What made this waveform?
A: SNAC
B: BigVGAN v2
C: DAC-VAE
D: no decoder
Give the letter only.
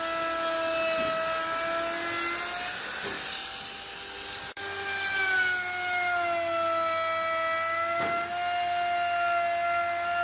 D